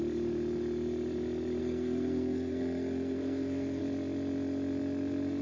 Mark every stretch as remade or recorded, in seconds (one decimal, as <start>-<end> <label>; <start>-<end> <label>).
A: 0.0-1.6 recorded; 1.6-3.8 remade; 3.8-5.4 recorded